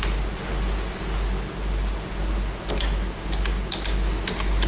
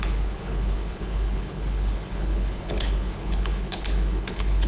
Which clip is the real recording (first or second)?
first